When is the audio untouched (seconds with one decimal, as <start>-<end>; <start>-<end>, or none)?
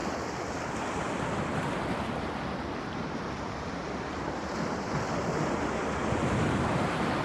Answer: 0.0-7.2